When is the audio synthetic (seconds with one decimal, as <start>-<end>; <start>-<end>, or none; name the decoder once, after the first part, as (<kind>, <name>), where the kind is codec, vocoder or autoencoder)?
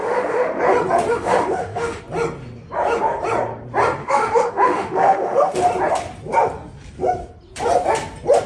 0.0-0.6 (autoencoder, DAC-VAE); 1.1-2.0; 4.0-5.6